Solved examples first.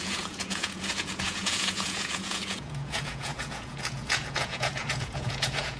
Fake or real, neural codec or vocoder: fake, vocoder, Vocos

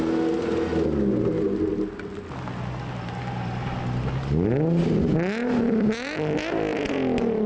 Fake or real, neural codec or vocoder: real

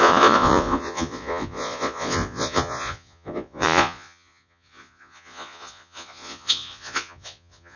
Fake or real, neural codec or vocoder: fake, vocoder, Vocos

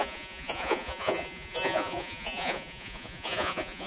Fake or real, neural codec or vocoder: fake, vocoder, Vocos